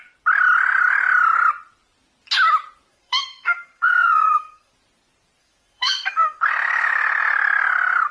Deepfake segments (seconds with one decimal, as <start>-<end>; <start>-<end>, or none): 2.9-4.7; 5.4-6.4